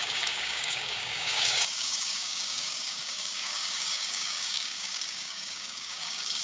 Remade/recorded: remade